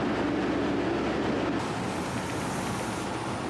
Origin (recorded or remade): recorded